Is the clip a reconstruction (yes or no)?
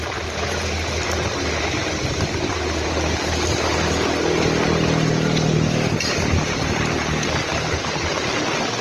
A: no